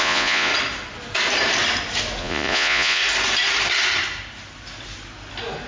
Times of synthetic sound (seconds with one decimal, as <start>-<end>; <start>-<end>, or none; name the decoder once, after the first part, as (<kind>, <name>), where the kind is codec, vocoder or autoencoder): 0.0-0.5 (vocoder, Vocos); 2.2-3.0